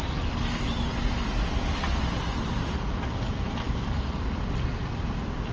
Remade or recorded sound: remade